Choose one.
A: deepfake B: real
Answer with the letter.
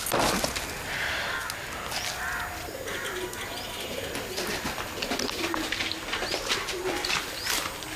B